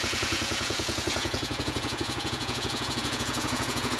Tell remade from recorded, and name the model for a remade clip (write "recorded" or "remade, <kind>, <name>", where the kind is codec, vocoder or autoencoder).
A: remade, vocoder, Vocos